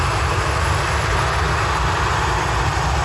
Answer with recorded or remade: recorded